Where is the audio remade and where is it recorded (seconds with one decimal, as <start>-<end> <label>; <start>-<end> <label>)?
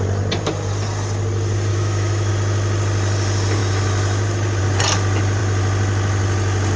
0.0-1.7 recorded; 1.7-2.3 remade; 2.3-6.8 recorded